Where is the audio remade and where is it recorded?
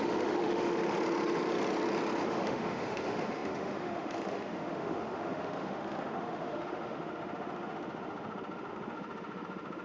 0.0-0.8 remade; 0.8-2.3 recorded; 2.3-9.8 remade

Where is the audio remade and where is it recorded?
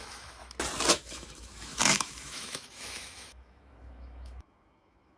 0.0-0.4 remade; 0.4-0.9 recorded; 0.9-5.2 remade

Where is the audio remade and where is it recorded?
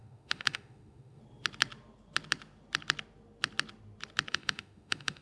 0.0-1.2 remade; 1.2-4.3 recorded; 4.3-5.2 remade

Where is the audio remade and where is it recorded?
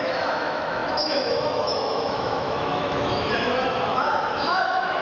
0.0-5.0 remade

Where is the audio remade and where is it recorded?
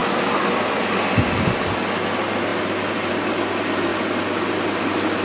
0.0-5.2 recorded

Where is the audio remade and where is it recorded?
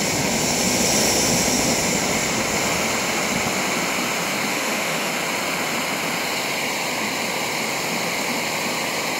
0.0-4.5 recorded; 4.5-5.1 remade; 5.1-9.2 recorded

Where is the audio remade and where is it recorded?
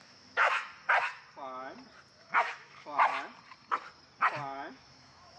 0.0-0.7 remade; 0.7-2.2 recorded; 2.2-3.1 remade; 3.1-4.7 recorded; 4.7-5.4 remade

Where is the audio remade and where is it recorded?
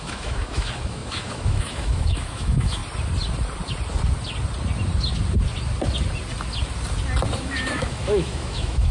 0.0-2.8 remade; 2.8-7.4 recorded; 7.4-8.9 remade